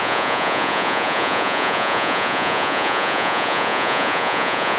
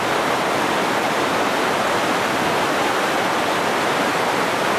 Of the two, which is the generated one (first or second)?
first